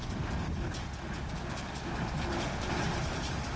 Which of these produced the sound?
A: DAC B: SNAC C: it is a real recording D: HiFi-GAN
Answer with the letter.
C